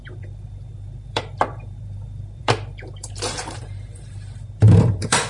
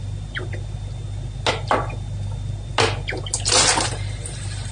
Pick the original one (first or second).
second